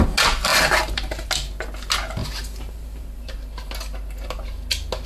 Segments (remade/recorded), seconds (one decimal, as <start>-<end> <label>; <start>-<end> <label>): 0.0-0.5 recorded; 0.5-1.3 remade; 1.3-2.2 recorded; 2.2-3.7 remade; 3.7-5.1 recorded